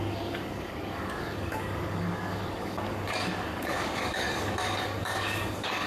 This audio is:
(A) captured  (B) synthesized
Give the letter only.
B